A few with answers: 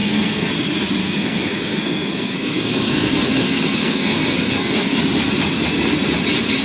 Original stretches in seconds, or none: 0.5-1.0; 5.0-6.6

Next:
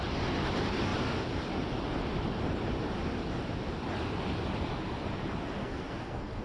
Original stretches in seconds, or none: 0.0-5.6

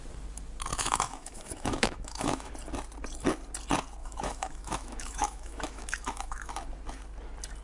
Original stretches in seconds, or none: 0.0-0.7; 2.5-4.0; 6.5-7.6

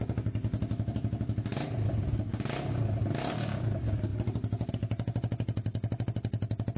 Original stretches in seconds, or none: 0.0-6.8